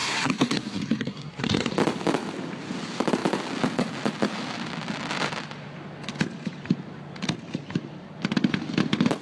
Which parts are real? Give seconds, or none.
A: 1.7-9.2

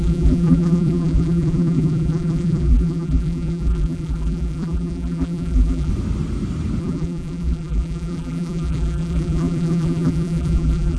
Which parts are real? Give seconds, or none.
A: 5.9-6.8

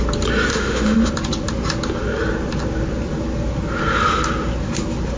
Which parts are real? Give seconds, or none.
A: 0.0-0.5; 1.1-5.2

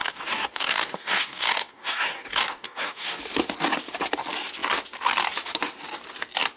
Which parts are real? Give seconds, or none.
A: 3.2-6.6

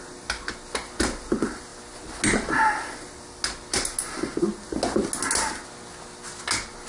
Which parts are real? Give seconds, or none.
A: 0.0-6.9